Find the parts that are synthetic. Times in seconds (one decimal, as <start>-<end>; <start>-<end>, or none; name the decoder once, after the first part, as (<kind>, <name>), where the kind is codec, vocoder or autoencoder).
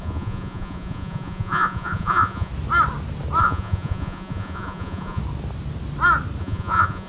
0.0-2.5 (vocoder, Vocos); 3.4-5.2; 6.4-7.1